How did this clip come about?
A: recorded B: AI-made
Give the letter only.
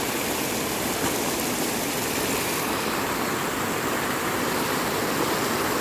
A